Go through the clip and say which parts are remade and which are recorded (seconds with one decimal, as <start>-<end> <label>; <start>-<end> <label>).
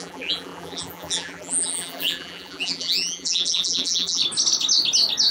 0.0-4.2 remade; 4.2-5.3 recorded